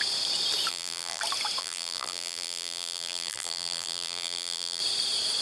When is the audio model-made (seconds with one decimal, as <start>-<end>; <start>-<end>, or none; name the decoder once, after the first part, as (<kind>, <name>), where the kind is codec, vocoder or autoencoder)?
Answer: 0.7-1.2 (vocoder, BigVGAN v2); 1.6-4.8